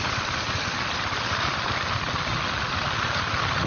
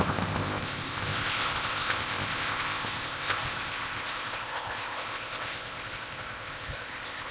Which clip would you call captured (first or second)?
first